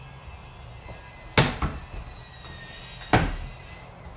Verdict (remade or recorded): recorded